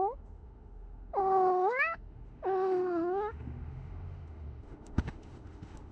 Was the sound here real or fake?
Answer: fake